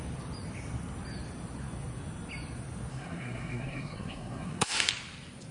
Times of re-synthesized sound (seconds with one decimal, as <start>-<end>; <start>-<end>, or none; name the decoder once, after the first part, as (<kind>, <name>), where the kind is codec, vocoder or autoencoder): 2.9-4.9 (codec, SNAC)